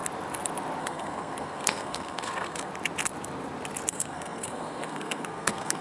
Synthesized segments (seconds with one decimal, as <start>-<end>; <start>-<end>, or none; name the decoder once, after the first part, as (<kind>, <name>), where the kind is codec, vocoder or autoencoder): 0.8-2.7 (codec, SNAC); 3.9-5.8